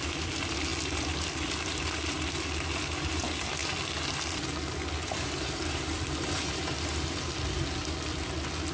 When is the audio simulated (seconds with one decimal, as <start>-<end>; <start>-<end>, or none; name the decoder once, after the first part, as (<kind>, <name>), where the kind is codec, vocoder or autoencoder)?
none